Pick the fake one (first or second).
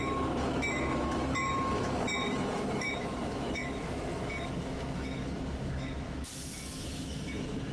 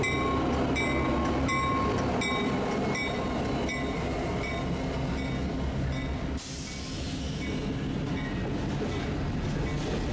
first